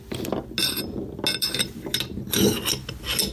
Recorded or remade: recorded